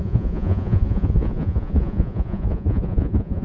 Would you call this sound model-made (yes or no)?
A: yes